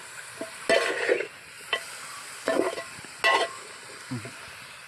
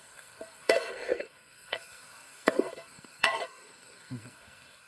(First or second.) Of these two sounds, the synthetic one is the second